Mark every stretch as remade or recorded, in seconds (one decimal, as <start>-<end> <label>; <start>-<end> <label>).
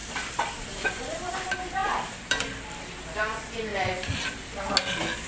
0.0-1.3 remade; 1.3-1.8 recorded; 1.8-2.9 remade; 2.9-3.7 recorded; 3.7-4.6 remade; 4.6-5.3 recorded